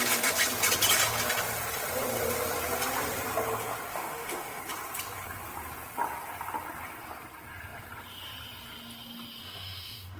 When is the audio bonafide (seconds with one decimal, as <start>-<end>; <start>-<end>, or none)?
0.0-3.9; 4.6-9.4